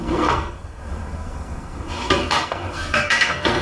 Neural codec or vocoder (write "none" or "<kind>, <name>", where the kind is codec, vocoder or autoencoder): codec, SNAC